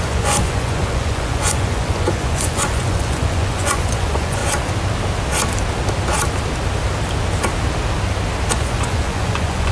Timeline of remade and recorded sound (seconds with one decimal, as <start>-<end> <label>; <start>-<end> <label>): 0.0-4.4 remade; 4.4-8.5 recorded; 8.5-9.7 remade